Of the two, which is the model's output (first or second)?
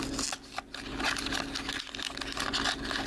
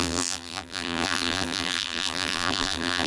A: second